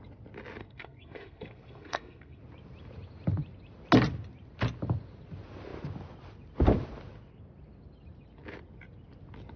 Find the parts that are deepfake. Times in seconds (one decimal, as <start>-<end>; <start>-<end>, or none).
0.6-2.4